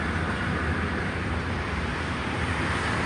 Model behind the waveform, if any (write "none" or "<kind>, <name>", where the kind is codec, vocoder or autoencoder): vocoder, BigVGAN v2